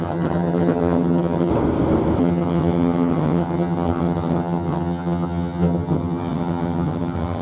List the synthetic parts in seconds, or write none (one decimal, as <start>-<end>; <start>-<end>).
0.0-1.5; 2.2-7.4